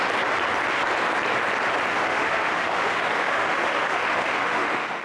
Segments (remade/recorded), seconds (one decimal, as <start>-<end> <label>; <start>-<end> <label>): 0.0-1.9 recorded; 1.9-5.0 remade